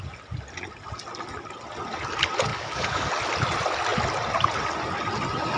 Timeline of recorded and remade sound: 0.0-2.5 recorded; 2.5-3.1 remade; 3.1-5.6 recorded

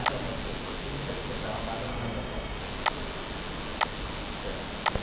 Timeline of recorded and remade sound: 0.0-1.9 recorded; 1.9-2.6 remade; 2.6-5.0 recorded

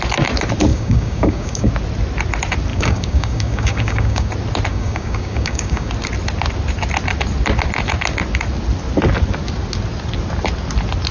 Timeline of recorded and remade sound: 0.0-0.7 recorded; 0.7-1.7 remade; 1.7-2.7 recorded; 2.7-4.3 remade; 4.3-4.7 recorded; 4.7-5.9 remade; 5.9-11.1 recorded

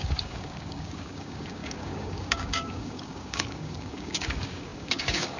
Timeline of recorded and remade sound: 0.0-5.4 remade

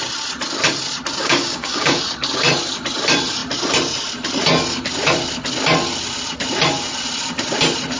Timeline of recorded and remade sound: 0.0-1.2 recorded; 1.2-2.0 remade; 2.0-8.0 recorded